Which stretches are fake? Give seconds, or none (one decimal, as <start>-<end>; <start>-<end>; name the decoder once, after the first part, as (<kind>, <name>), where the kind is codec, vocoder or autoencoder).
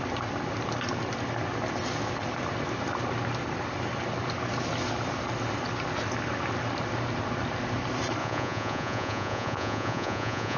8.2-10.6 (vocoder, Vocos)